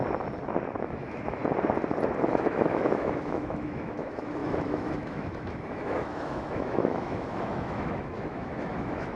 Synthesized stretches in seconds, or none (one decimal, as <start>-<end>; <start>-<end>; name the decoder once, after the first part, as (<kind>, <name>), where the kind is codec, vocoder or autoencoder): 0.8-1.4 (autoencoder, DAC-VAE); 2.3-9.2